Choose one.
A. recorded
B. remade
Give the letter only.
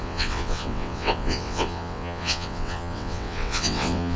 B